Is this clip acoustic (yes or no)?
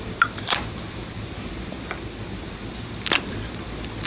no